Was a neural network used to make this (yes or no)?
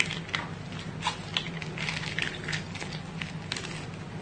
no